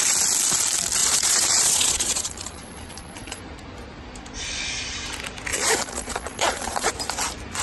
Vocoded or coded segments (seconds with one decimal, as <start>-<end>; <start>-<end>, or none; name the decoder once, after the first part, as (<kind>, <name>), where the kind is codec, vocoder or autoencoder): 1.0-3.4 (vocoder, Vocos); 5.5-6.9